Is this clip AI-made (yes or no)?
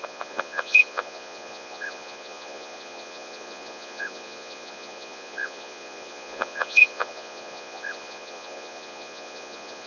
yes